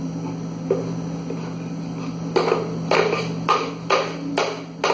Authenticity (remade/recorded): recorded